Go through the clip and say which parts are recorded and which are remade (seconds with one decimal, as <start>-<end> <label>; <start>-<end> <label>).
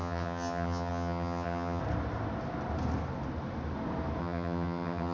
0.0-1.8 remade; 1.8-4.2 recorded; 4.2-5.1 remade